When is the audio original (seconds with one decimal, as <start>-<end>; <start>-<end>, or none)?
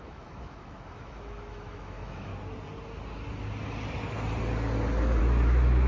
2.3-5.2